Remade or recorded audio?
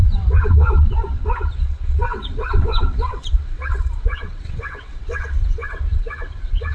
remade